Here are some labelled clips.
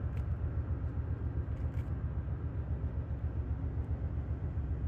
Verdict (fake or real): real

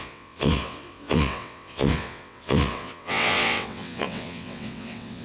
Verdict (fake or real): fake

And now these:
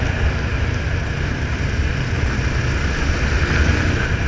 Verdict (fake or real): real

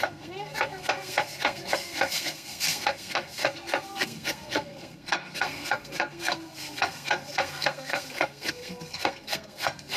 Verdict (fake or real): fake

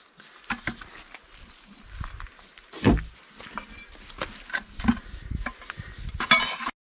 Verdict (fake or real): real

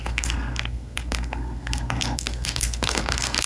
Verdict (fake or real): fake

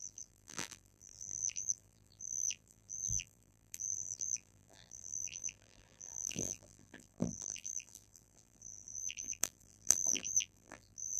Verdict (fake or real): fake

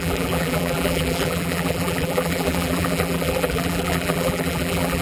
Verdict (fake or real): fake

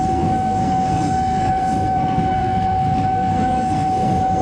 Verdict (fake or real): fake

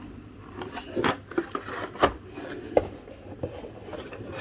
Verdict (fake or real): real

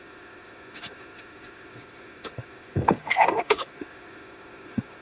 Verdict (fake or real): fake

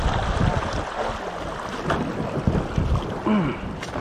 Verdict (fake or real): real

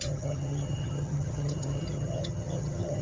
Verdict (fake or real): fake